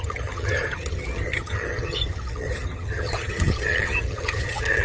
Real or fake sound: fake